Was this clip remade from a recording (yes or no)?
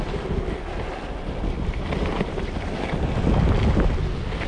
no